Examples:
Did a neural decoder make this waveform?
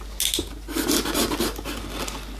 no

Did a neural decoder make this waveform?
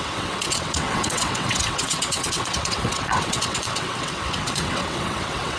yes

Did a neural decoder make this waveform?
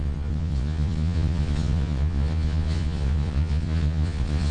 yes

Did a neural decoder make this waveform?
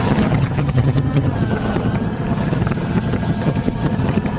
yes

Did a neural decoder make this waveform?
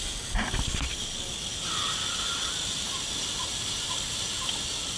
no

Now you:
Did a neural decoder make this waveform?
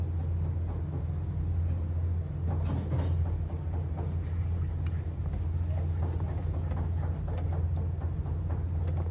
no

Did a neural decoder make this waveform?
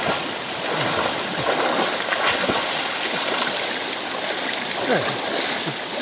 no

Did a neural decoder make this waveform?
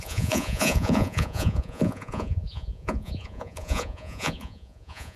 yes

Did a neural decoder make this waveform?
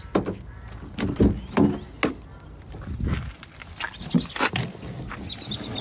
no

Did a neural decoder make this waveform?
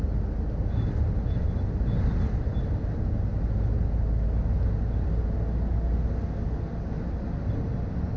no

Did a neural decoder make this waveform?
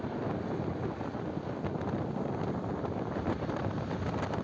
no